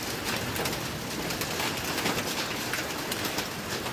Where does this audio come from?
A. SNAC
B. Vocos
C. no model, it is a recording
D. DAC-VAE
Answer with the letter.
C